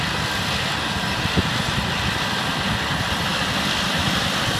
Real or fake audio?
real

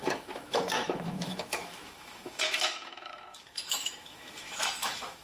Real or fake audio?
fake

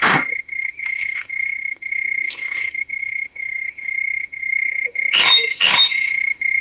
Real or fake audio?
fake